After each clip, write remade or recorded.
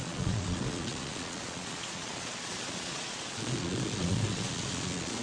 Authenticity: remade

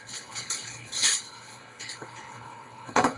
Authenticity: remade